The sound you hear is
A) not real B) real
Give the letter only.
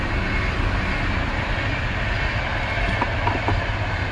B